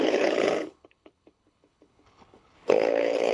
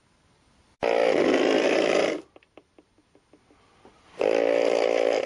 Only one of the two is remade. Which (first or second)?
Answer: first